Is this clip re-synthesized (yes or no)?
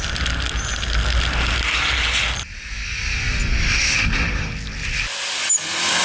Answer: no